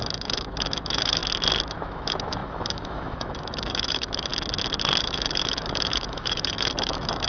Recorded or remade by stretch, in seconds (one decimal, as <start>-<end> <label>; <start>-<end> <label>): 0.0-1.2 remade; 1.2-1.7 recorded; 1.7-4.3 remade; 4.3-5.0 recorded; 5.0-7.3 remade

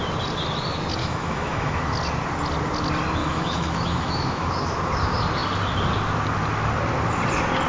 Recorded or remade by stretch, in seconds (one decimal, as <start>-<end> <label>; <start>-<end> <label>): 0.0-1.0 recorded; 1.0-1.8 remade; 1.8-3.2 recorded; 3.2-4.5 remade; 4.5-7.7 recorded

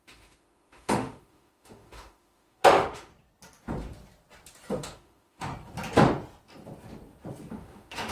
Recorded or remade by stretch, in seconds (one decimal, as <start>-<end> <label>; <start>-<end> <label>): 0.0-3.1 remade; 3.1-4.7 recorded; 4.7-5.5 remade; 5.5-7.5 recorded; 7.5-8.1 remade

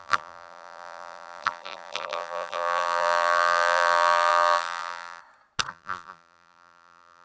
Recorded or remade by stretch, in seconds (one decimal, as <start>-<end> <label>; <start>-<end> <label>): 0.0-5.2 remade; 5.2-5.7 recorded; 5.7-7.2 remade

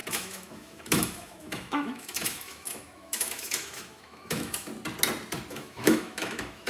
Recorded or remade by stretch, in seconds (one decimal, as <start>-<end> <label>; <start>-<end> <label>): 0.0-4.7 remade; 4.7-5.5 recorded; 5.5-6.7 remade